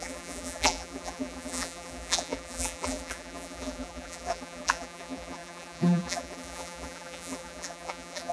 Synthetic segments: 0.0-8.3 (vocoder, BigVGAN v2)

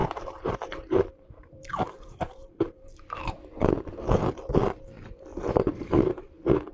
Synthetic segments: 0.0-4.0 (vocoder, BigVGAN v2); 5.3-5.9